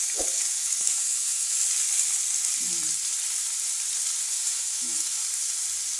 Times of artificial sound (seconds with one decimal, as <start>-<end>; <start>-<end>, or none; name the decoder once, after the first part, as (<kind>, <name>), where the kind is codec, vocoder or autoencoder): 0.0-1.6 (autoencoder, DAC-VAE); 4.3-5.2